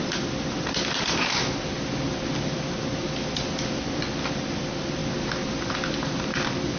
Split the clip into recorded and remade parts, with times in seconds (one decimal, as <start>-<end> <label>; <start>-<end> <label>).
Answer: 0.0-6.8 recorded